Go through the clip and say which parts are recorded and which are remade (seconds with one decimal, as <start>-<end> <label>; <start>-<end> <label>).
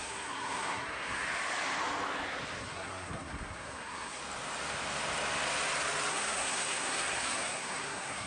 0.0-1.2 remade; 1.2-2.6 recorded; 2.6-4.2 remade; 4.2-6.1 recorded; 6.1-8.3 remade